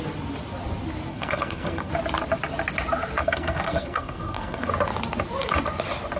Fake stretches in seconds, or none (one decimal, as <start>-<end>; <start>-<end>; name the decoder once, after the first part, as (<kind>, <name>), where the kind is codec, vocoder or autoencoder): 1.1-1.9 (codec, SNAC); 3.2-4.7